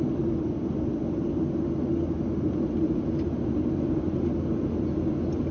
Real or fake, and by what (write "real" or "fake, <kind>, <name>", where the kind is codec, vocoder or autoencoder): real